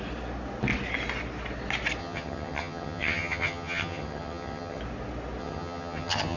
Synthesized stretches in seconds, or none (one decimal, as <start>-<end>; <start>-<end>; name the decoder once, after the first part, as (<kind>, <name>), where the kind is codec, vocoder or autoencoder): 2.0-4.8 (vocoder, HiFi-GAN); 5.4-6.4